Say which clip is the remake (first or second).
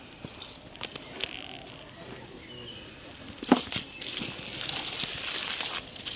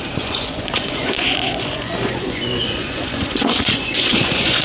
second